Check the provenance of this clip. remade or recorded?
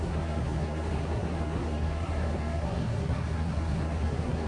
remade